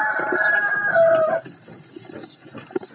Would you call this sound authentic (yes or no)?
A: yes